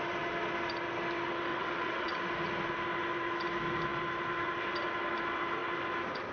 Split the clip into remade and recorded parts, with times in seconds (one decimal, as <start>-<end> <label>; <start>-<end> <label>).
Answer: 0.0-1.5 recorded; 1.5-2.2 remade; 2.2-6.3 recorded